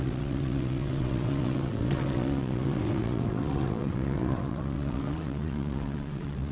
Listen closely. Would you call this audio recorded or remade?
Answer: remade